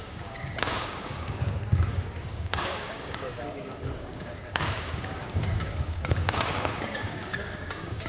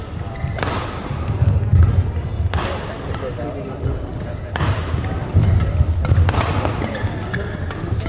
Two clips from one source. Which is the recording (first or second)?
second